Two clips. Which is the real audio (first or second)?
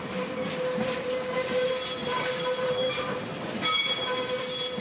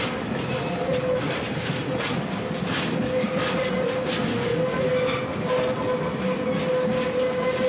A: second